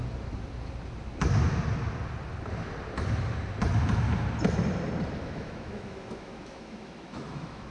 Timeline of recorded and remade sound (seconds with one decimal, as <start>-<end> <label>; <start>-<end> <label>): 0.0-5.2 recorded; 5.2-7.7 remade